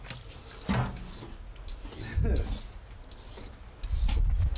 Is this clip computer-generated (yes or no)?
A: no